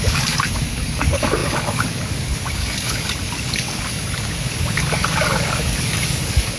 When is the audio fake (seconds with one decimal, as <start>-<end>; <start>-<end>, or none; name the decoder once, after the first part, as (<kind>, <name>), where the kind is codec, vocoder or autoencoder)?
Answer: 0.0-6.6 (codec, DAC)